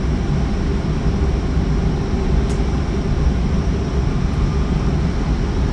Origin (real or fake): real